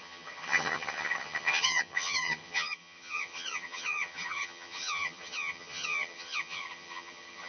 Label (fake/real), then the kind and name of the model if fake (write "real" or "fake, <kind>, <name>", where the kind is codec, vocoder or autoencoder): fake, vocoder, HiFi-GAN